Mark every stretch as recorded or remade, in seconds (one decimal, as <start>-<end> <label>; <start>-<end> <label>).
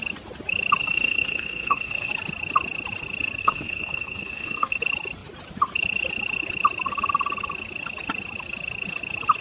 0.0-0.8 recorded; 0.8-2.1 remade; 2.1-3.4 recorded; 3.4-4.8 remade; 4.8-9.4 recorded